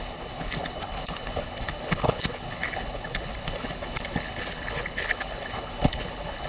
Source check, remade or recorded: remade